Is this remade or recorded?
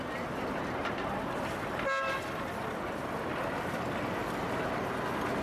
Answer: recorded